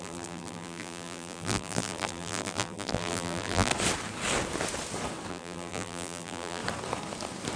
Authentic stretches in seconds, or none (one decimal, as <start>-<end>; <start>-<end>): 3.7-5.3; 6.6-7.6